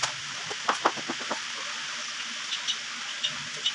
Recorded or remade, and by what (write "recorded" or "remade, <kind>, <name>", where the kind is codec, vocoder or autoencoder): recorded